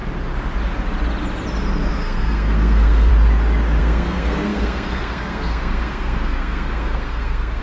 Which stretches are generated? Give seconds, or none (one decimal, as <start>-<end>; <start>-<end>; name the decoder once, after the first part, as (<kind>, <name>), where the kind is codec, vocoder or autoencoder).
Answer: 1.9-3.1 (codec, SNAC); 3.8-7.6